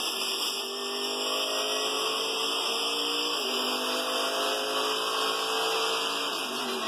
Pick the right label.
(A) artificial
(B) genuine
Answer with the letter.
B